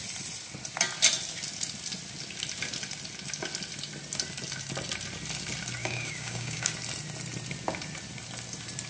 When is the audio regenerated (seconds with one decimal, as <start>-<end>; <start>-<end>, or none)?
5.8-6.7